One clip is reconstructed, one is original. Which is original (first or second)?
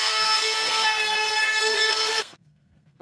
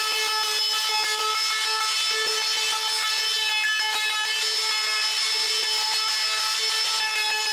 second